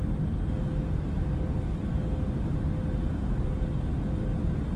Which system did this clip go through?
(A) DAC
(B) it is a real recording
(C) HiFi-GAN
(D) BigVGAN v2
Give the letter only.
B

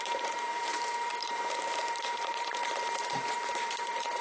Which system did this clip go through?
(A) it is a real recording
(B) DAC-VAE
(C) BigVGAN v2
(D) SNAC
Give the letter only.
C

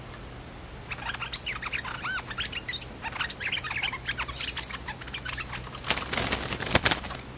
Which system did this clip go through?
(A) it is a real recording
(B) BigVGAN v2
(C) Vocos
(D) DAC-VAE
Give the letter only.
A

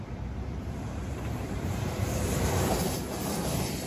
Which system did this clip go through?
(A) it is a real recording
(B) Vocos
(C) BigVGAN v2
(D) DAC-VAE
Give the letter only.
C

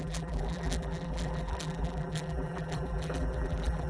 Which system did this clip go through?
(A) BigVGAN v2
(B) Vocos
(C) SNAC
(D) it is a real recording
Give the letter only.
A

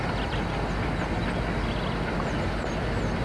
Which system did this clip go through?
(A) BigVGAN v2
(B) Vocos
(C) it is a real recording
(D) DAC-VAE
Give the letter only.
C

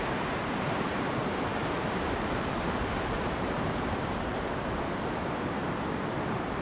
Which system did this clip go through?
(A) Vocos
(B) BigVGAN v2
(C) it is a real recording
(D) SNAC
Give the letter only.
B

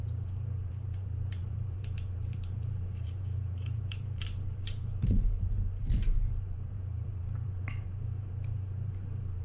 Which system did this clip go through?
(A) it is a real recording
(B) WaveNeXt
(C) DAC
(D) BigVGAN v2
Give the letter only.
D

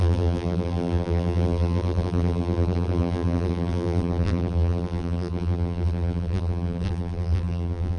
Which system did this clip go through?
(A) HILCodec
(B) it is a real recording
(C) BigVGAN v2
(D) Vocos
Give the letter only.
C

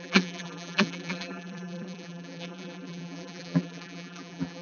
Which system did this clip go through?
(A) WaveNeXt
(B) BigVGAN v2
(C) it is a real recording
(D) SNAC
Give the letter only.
B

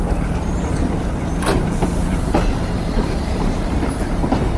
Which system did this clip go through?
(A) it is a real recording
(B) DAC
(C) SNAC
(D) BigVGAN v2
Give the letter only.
D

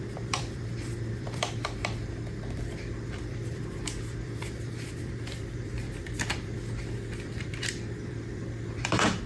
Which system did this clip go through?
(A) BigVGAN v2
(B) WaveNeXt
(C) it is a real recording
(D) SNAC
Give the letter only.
A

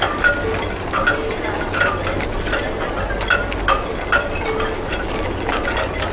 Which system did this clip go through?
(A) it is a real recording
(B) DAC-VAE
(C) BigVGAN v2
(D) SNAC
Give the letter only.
A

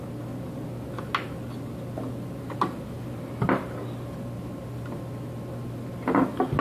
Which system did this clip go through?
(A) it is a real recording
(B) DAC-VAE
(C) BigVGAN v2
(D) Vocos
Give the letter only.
A